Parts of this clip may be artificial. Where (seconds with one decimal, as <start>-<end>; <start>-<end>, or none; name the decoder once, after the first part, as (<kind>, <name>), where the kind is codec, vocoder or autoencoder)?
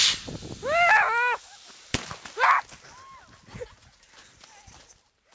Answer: 3.5-4.1 (vocoder, Vocos)